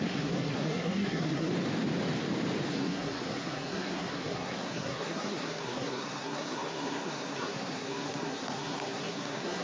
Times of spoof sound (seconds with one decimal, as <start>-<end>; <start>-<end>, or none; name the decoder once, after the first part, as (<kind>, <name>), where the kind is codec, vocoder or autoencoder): 0.0-1.5 (codec, SNAC); 2.7-9.6